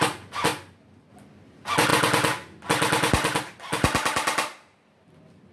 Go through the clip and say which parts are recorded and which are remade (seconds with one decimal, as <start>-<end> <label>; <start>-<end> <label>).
0.0-5.5 recorded